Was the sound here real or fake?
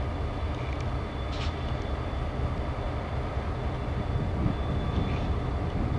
real